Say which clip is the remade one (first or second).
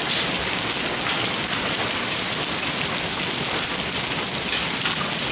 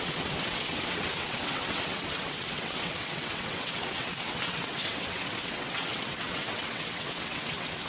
second